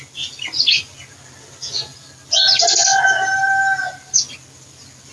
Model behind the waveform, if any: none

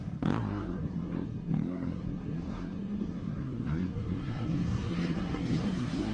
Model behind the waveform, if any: codec, SNAC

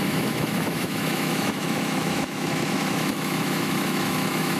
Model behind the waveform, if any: autoencoder, DAC-VAE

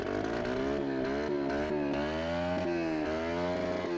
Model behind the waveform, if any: none